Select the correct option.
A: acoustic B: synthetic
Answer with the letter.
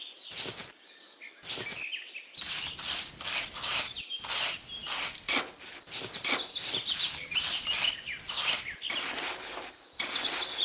A